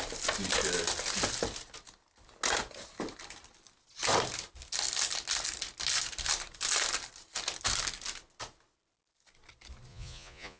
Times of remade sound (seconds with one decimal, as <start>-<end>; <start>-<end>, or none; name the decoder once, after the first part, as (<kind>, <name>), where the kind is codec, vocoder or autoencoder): 9.9-10.6 (vocoder, Vocos)